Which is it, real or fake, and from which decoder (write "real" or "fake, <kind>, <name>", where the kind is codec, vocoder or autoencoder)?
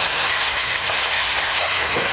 fake, codec, SNAC